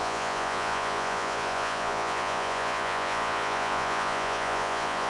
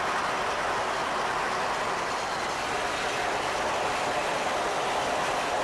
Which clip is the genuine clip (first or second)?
second